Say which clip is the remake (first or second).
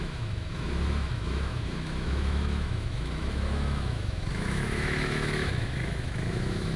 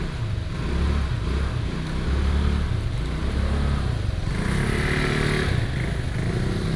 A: first